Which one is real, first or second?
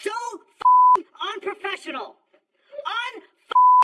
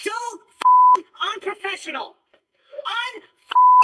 first